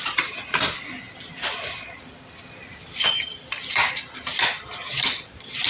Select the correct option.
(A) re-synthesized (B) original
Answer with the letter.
A